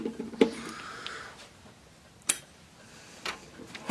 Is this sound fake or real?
real